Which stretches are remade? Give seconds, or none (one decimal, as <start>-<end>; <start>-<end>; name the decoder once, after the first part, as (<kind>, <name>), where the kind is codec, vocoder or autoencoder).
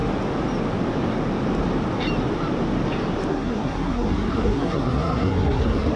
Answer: 3.3-6.0 (codec, SNAC)